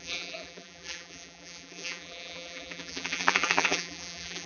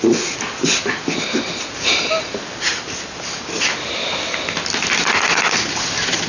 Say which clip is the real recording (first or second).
second